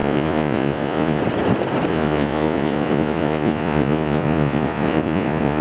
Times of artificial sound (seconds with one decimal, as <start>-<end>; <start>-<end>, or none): 0.0-1.2; 1.9-5.6